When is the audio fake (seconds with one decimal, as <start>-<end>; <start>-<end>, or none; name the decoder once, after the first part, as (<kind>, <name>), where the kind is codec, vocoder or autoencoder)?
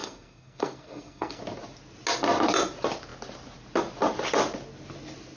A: 0.0-1.4 (codec, SNAC)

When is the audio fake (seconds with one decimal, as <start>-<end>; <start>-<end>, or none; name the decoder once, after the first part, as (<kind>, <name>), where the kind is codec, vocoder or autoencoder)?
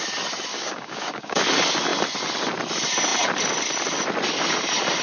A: 0.5-1.4 (codec, DAC)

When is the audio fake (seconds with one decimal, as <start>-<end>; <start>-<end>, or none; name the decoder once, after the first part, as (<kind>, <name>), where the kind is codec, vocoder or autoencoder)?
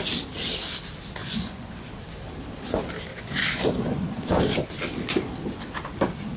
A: 1.2-1.9 (vocoder, Vocos); 3.1-4.4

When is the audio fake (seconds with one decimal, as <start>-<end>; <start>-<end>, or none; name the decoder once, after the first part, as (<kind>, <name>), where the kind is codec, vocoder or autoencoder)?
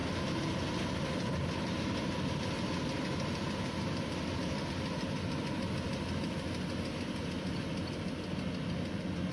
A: none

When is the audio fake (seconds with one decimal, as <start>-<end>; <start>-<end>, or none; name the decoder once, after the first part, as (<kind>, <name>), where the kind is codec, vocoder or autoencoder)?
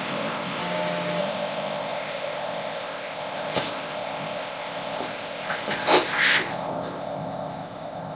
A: 0.0-0.6 (codec, ZipCodec); 1.2-8.2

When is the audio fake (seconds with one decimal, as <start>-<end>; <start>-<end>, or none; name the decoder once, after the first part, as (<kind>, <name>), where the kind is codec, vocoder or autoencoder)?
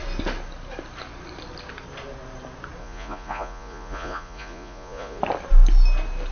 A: 2.8-5.2 (vocoder, Vocos)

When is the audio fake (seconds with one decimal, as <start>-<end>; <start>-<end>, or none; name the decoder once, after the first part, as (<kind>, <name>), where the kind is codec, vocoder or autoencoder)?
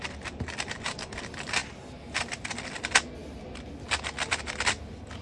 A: 1.6-2.5 (vocoder, BigVGAN v2); 3.2-3.7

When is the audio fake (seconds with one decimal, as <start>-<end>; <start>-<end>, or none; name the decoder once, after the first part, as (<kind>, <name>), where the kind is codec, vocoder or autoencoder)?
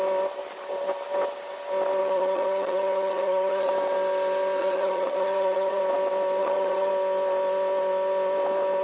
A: 2.0-3.7 (vocoder, HiFi-GAN); 4.6-5.8; 6.4-6.9